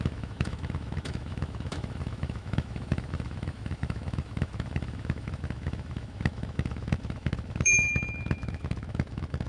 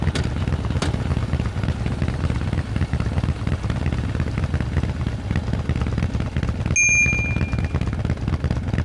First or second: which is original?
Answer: second